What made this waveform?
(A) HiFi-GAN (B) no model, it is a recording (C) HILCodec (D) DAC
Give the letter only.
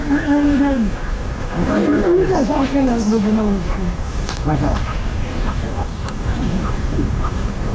D